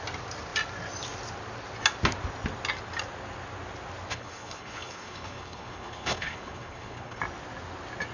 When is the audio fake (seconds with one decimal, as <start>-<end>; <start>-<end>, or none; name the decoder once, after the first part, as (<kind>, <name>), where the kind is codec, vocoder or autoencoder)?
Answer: 4.1-7.2 (codec, HILCodec)

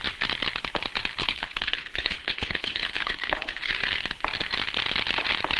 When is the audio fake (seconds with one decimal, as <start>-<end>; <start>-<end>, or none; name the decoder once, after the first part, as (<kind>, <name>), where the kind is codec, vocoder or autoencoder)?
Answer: 1.2-3.7 (codec, HILCodec)

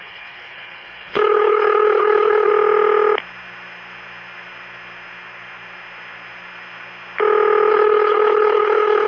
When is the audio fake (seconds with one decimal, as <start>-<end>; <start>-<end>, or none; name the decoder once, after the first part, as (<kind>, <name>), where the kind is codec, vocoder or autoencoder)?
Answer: 0.0-2.5 (codec, HILCodec); 7.7-9.1

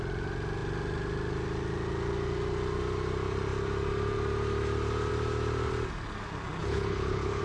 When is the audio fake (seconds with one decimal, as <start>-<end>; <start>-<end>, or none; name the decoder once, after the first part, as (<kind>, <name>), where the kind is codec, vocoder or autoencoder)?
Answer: 6.6-7.4 (codec, HILCodec)

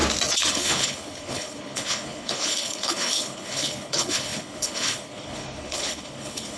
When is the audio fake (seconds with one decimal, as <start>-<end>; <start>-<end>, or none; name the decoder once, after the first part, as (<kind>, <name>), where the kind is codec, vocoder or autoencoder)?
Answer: 0.5-6.6 (codec, HILCodec)

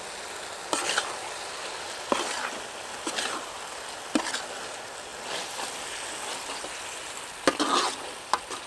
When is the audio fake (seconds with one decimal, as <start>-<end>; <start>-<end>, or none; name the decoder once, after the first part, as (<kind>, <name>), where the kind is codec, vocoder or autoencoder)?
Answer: none

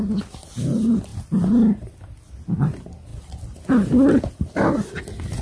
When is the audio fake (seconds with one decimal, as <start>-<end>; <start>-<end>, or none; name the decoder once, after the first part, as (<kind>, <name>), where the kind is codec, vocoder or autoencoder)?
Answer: none